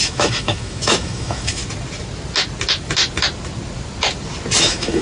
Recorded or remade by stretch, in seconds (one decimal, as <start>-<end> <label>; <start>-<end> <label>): 0.0-1.6 remade; 1.6-4.6 recorded; 4.6-5.0 remade